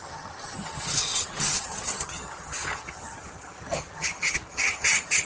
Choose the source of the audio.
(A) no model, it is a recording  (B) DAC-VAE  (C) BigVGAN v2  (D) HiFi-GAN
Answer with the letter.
D